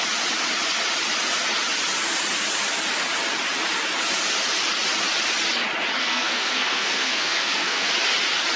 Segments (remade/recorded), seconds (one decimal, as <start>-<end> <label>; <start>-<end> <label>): 0.0-6.0 recorded; 6.0-7.9 remade; 7.9-8.6 recorded